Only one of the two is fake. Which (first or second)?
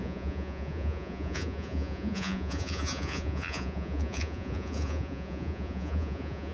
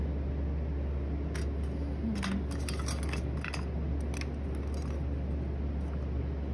first